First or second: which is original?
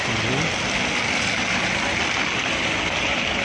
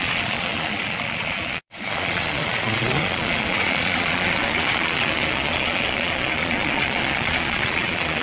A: first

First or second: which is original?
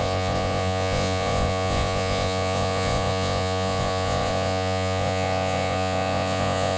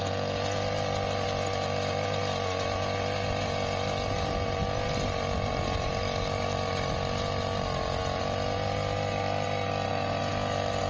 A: second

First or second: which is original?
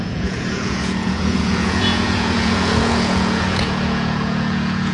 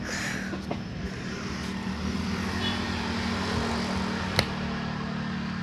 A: second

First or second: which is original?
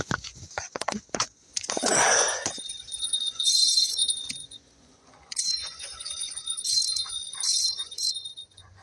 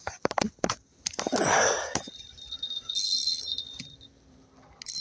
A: second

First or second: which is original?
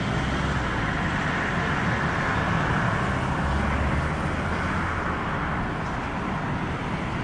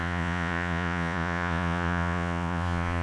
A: first